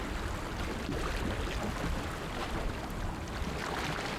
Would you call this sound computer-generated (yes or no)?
no